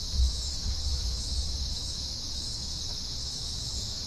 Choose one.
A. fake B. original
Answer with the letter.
A